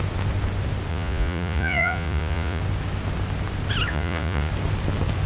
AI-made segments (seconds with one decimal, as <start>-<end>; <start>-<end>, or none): 0.9-2.6; 3.9-4.5